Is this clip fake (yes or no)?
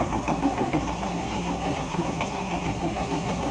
yes